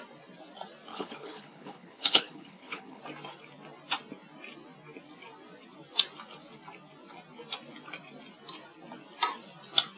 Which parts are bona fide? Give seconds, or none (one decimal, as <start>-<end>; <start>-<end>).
0.0-0.9; 3.0-10.0